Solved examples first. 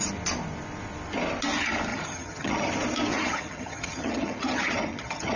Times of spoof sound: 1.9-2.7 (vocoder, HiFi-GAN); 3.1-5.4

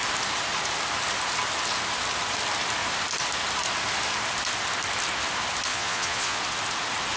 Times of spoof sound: 5.7-6.4 (vocoder, Vocos)

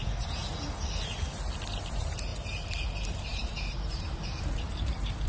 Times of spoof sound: 0.0-0.4 (vocoder, BigVGAN v2); 1.9-2.3; 2.9-5.3